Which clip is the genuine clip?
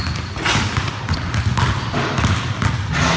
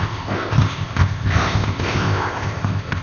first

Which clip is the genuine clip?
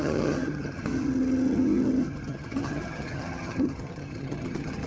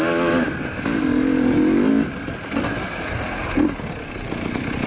second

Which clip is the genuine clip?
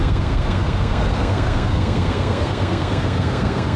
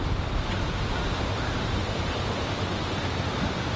second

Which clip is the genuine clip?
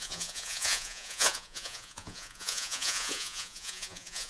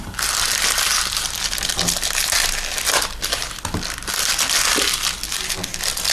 second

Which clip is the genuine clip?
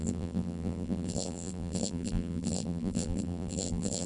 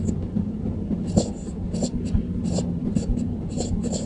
second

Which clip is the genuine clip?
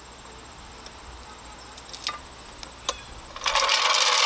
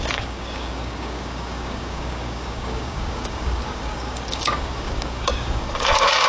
first